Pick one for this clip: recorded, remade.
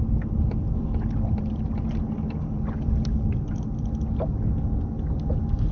recorded